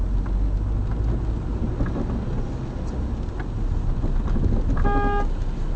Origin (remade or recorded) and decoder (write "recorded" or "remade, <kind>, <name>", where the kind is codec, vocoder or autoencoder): recorded